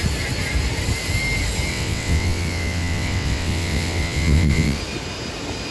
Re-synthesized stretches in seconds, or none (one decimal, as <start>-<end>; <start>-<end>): 1.7-4.8